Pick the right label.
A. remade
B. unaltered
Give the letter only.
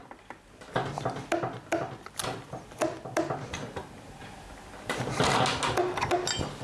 B